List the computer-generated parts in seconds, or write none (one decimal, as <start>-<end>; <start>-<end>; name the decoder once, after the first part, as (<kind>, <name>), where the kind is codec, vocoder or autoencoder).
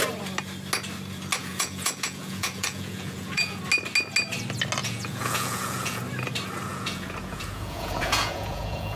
1.4-3.6 (vocoder, Vocos); 4.8-6.0; 6.7-9.0